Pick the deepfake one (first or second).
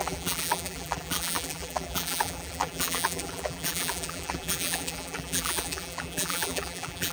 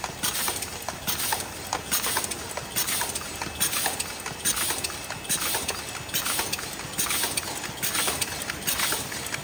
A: first